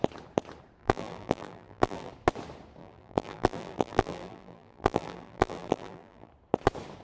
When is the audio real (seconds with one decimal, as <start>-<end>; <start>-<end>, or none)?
0.0-0.8; 2.1-2.8; 6.3-7.0